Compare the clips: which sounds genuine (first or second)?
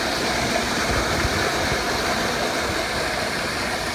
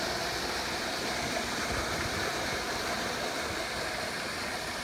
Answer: first